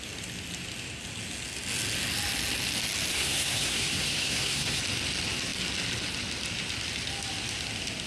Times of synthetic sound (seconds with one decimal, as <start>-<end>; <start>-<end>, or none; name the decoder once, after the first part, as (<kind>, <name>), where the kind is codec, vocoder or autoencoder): 3.1-4.8 (codec, SNAC)